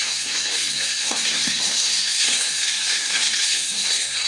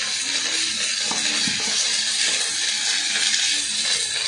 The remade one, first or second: first